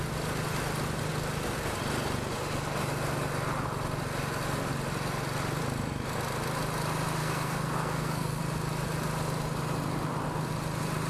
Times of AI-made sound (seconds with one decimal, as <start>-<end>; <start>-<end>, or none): 7.2-8.4